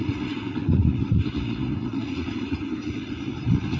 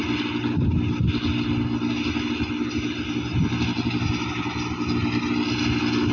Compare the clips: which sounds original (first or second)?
second